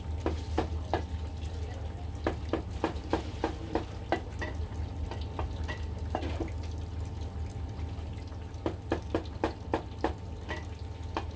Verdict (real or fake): real